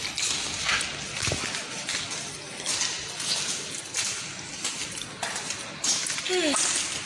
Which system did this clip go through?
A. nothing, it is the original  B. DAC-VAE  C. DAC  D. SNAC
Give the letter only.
A